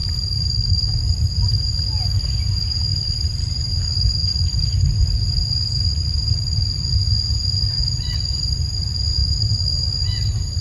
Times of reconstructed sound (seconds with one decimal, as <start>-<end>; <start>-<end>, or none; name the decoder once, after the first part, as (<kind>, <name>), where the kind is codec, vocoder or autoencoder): 0.0-1.3 (vocoder, BigVGAN v2); 2.9-3.7; 4.3-5.0

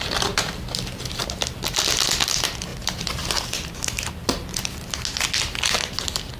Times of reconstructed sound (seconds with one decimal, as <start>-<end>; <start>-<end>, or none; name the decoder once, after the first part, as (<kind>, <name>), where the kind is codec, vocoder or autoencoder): none

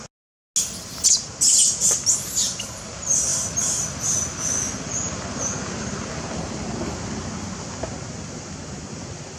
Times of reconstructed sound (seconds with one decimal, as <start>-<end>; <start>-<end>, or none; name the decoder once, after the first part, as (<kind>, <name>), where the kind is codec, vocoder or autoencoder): none

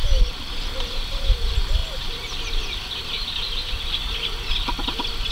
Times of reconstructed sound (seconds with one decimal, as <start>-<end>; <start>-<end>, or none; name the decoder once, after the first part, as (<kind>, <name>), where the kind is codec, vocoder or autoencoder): none

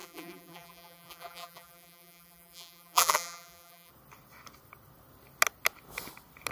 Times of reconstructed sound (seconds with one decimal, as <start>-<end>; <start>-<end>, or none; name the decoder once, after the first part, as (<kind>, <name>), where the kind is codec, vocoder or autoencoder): 0.0-3.9 (vocoder, BigVGAN v2)

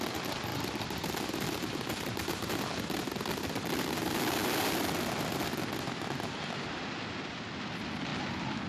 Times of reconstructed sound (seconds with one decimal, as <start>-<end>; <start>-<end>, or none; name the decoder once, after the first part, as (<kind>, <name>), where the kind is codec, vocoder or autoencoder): 0.5-2.1 (vocoder, BigVGAN v2); 8.1-8.7

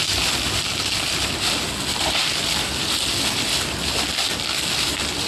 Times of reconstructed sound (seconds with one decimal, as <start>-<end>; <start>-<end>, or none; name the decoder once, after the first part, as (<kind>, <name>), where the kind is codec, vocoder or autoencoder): none